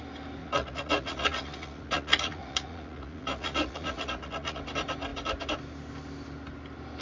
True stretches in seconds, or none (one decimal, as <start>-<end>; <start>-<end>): 0.0-0.4; 4.6-7.0